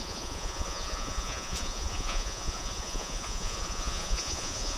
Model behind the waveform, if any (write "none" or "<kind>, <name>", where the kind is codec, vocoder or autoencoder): vocoder, Vocos